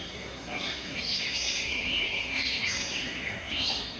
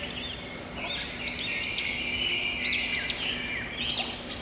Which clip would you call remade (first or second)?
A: first